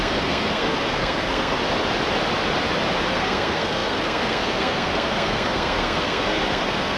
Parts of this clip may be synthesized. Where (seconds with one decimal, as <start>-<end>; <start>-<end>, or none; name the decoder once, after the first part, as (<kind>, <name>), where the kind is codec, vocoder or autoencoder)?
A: 0.0-1.6 (codec, SNAC); 3.1-7.0